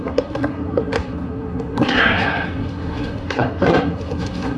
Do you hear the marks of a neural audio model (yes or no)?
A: yes